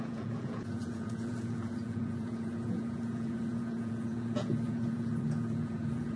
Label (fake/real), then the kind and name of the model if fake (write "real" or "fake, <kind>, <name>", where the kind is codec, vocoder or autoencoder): fake, vocoder, Vocos